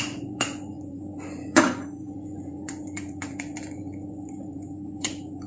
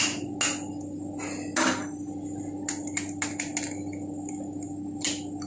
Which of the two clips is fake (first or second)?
first